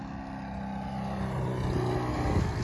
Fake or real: real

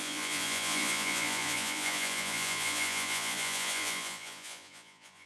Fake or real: fake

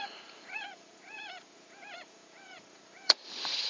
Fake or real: fake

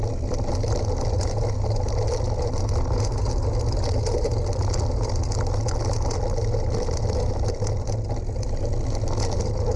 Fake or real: real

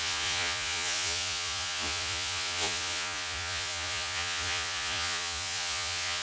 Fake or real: fake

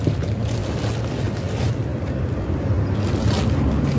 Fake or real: real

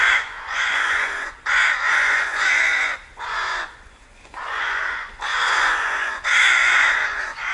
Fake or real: fake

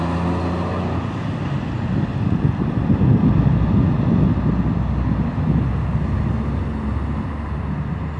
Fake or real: real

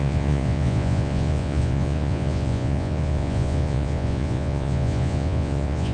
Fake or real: fake